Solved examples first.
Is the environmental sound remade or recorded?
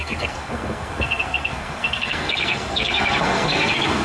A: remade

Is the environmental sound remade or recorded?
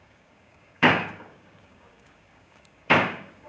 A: remade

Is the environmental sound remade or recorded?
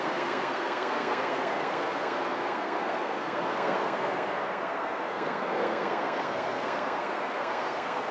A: remade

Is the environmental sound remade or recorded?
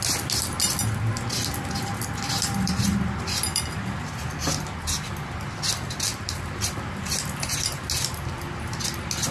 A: recorded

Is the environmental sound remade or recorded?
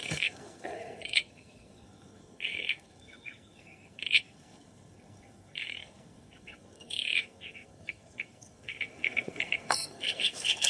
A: remade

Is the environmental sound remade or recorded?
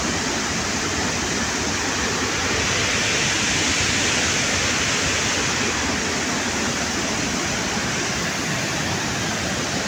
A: recorded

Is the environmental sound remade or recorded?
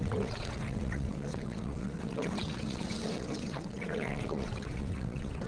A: remade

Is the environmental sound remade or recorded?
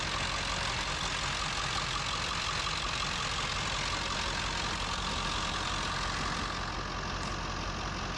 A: recorded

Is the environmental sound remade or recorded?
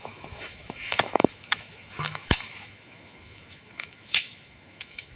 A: remade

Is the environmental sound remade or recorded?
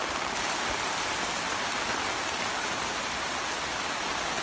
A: recorded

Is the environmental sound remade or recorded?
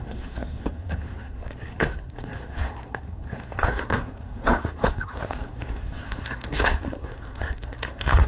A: remade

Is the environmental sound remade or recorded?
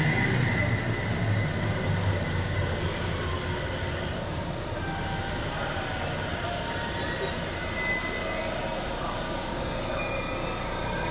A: recorded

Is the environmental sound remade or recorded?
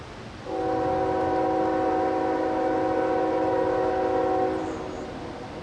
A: recorded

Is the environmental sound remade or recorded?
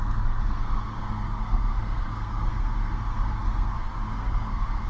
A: remade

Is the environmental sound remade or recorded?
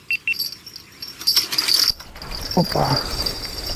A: recorded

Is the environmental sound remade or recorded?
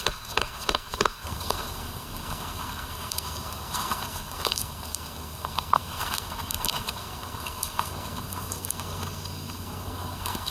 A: remade